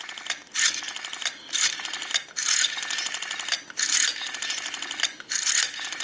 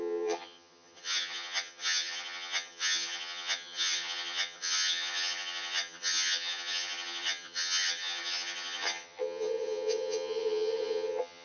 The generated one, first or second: second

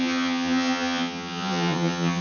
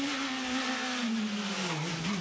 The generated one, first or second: first